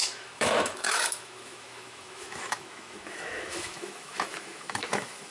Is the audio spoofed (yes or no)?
yes